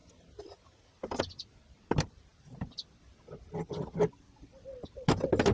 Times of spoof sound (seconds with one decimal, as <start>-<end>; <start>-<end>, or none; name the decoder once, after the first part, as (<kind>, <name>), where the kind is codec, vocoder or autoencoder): none